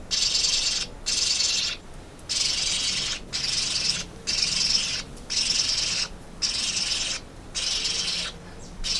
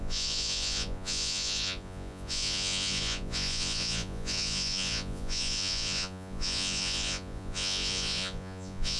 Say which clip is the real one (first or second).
first